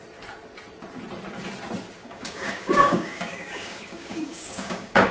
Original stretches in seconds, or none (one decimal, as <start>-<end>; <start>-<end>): 0.0-2.0

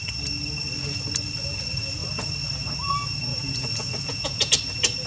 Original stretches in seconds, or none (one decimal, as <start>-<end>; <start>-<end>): 0.0-3.3; 4.5-5.1

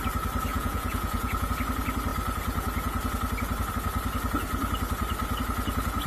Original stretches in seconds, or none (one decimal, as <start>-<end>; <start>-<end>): 0.0-0.5; 1.5-6.1

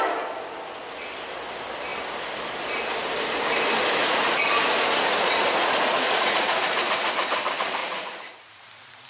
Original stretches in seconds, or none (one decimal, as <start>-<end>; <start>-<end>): 0.0-4.0; 7.1-7.8

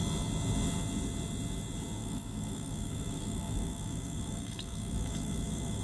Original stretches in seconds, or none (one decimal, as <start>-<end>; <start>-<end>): 0.0-2.0

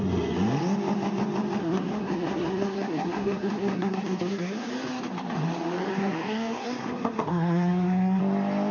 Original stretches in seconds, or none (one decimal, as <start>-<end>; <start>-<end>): 0.0-1.6; 4.7-5.9; 8.2-8.7

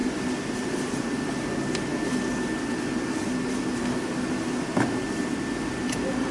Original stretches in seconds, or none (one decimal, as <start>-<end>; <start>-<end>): 0.0-6.3

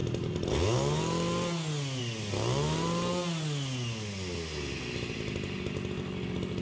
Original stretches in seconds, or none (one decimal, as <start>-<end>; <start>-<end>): 0.0-6.6